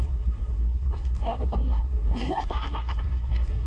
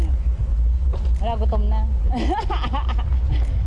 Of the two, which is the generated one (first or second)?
first